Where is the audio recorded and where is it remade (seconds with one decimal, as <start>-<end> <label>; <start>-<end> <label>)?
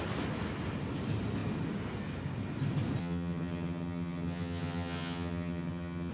0.0-3.0 recorded; 3.0-6.1 remade